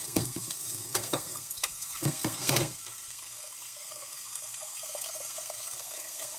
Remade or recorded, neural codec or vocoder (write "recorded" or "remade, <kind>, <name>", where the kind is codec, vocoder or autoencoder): remade, codec, SNAC